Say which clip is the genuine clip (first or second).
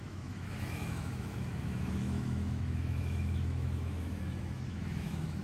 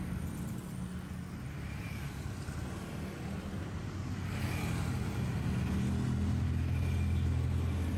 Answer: second